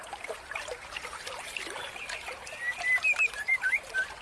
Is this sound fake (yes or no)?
yes